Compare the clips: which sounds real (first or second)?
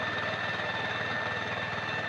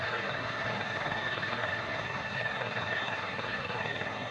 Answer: first